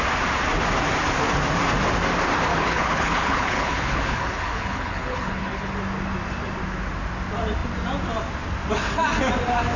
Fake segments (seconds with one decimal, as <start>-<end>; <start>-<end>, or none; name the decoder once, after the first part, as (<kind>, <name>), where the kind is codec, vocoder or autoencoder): 2.5-5.7 (codec, HILCodec)